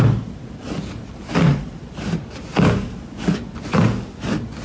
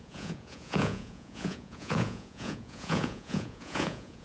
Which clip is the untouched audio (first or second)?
first